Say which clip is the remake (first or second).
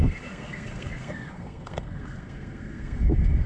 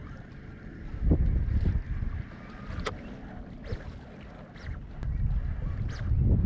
first